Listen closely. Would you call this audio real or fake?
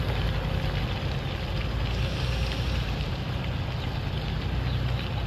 real